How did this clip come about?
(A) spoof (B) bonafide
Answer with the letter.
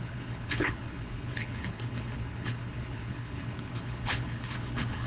A